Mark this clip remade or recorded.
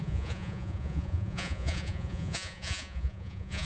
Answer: remade